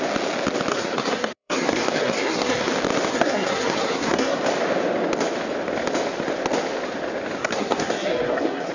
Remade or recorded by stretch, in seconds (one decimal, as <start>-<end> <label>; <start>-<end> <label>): 0.0-0.7 recorded; 0.7-2.7 remade; 2.7-3.1 recorded; 3.1-4.4 remade; 4.4-7.4 recorded; 7.4-8.7 remade